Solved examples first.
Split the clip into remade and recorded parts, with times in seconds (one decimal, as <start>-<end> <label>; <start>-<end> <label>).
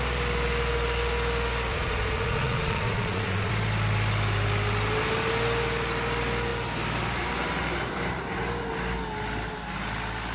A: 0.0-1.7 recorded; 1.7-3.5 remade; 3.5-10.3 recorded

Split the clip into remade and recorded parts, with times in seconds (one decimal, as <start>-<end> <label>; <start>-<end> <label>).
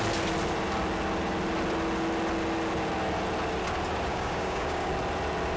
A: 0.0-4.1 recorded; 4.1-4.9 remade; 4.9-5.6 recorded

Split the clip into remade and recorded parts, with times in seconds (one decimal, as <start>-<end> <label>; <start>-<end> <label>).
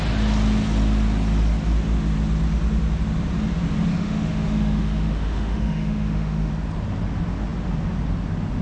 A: 0.0-3.9 recorded; 3.9-6.5 remade; 6.5-8.6 recorded